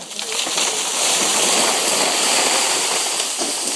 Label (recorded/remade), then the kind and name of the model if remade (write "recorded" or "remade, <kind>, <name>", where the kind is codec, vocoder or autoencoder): recorded